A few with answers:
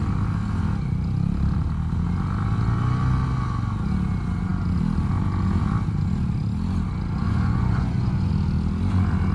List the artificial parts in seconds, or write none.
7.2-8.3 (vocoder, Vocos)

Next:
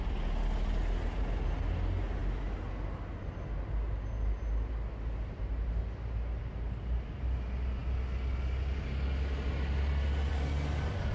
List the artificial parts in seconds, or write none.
none